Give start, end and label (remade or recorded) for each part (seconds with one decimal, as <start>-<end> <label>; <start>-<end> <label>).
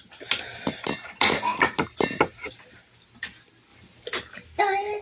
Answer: 0.0-5.0 recorded